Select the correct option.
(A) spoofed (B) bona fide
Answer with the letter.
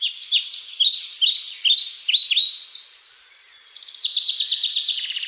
B